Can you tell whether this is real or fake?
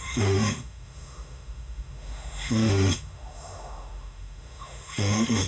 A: fake